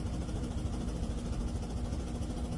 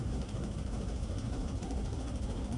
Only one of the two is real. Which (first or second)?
first